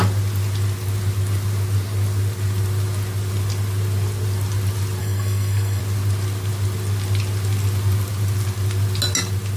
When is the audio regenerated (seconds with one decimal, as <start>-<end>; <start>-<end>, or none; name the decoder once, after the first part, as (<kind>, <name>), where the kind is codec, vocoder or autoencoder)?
5.0-5.8 (codec, SNAC)